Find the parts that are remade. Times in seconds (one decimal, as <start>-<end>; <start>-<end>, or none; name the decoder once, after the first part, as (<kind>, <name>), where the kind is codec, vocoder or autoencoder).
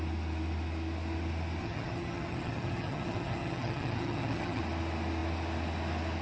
1.6-4.6 (vocoder, HiFi-GAN)